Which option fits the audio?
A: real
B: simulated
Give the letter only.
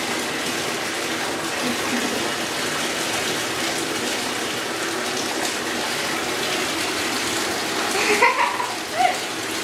A